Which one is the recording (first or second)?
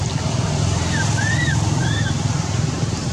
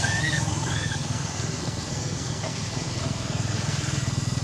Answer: first